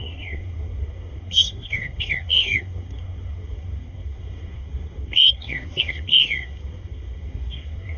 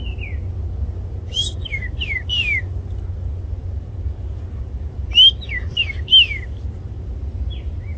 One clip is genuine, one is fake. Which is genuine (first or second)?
second